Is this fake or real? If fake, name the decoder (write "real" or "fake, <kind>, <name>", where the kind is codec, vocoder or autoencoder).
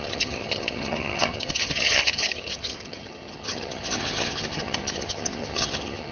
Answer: fake, vocoder, HiFi-GAN